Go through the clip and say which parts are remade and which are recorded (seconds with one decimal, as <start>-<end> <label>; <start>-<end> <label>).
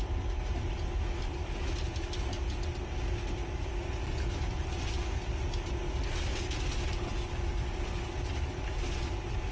0.0-9.5 recorded